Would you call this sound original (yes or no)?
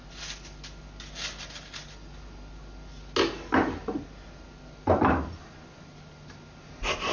yes